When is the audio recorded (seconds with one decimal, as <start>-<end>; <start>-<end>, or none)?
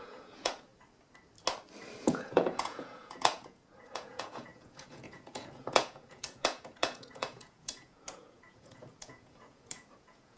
0.7-2.0